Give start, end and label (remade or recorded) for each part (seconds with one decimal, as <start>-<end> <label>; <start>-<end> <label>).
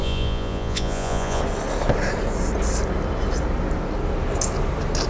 0.0-1.4 remade; 1.4-5.1 recorded